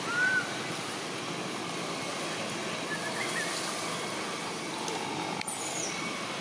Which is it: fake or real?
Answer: real